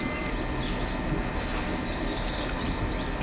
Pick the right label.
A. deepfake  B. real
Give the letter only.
B